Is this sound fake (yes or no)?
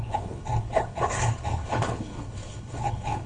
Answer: yes